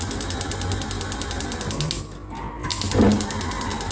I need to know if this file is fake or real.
real